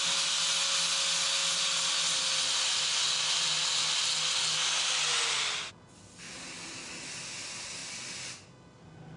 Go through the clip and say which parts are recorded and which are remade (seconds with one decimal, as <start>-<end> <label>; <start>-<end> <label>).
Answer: 0.0-9.2 recorded